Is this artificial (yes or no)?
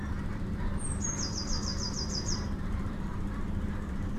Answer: yes